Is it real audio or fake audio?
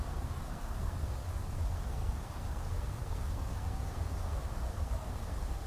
fake